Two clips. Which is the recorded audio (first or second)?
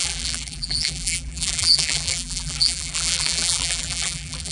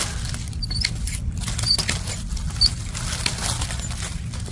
second